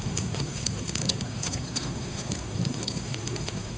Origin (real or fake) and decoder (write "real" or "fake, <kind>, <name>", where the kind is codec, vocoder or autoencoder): fake, codec, SNAC